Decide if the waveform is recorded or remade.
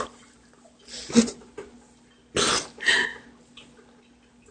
recorded